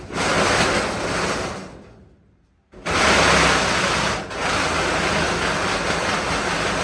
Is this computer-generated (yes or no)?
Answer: no